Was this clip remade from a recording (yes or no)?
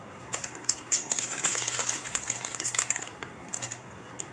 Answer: yes